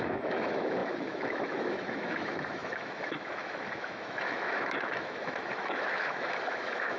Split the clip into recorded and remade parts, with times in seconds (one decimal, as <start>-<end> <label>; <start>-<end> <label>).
0.0-7.0 remade